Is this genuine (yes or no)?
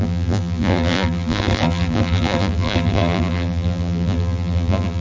no